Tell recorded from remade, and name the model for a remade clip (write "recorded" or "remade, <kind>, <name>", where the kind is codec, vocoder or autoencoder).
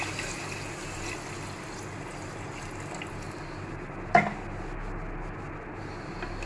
recorded